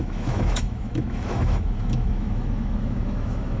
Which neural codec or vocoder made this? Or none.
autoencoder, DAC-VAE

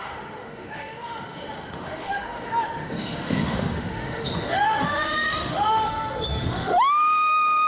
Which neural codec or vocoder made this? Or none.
autoencoder, DAC-VAE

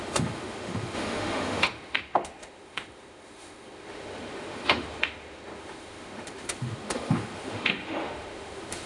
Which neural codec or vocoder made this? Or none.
autoencoder, DAC-VAE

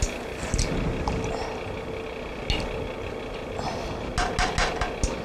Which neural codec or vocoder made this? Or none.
none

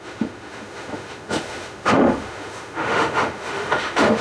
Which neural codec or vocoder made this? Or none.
autoencoder, DAC-VAE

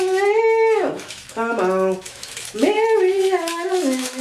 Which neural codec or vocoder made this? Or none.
autoencoder, DAC-VAE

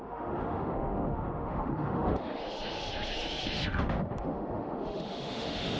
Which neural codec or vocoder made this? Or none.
autoencoder, DAC-VAE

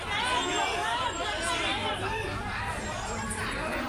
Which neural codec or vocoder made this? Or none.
none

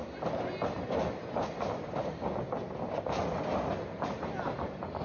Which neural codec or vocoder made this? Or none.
none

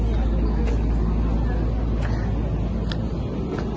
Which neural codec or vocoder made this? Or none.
none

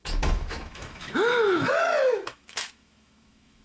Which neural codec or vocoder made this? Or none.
autoencoder, DAC-VAE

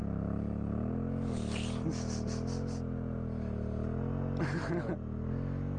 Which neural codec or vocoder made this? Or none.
none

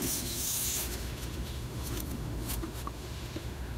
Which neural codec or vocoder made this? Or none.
autoencoder, DAC-VAE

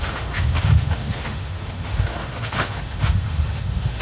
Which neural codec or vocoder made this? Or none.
autoencoder, DAC-VAE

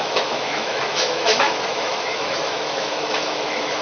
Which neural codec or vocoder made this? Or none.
autoencoder, DAC-VAE